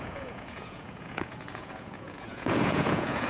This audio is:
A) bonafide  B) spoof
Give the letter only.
B